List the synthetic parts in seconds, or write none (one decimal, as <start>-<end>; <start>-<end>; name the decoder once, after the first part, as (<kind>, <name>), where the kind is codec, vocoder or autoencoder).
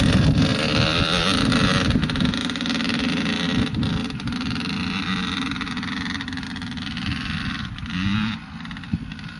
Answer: none